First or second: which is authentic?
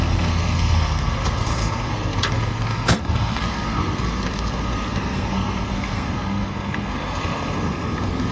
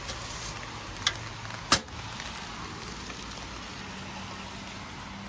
second